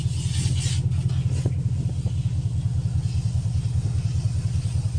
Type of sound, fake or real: real